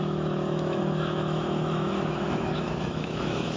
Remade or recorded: remade